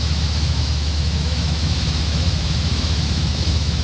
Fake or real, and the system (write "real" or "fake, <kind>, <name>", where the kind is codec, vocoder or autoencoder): fake, autoencoder, DAC-VAE